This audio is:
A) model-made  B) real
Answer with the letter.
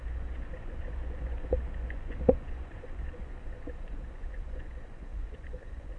A